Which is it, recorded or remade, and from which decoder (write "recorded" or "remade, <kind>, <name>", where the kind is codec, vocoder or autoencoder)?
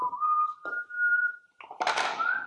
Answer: recorded